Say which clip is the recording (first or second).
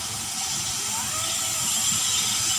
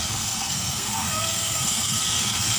first